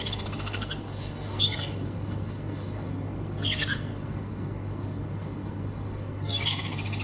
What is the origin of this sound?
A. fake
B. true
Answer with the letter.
A